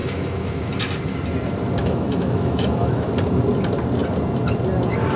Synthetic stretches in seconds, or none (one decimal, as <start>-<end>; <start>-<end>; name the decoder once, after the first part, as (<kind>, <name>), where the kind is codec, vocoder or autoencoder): 0.0-0.7 (autoencoder, DAC-VAE); 1.8-3.1